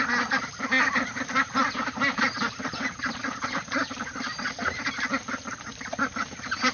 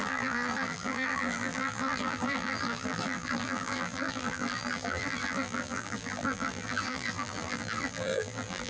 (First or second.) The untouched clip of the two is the first